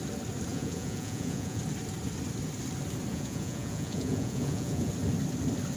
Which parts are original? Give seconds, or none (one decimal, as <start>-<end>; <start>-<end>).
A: 0.0-0.5; 1.6-3.1; 4.9-5.8